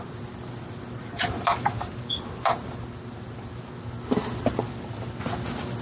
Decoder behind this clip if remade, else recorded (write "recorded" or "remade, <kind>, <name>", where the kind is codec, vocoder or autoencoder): recorded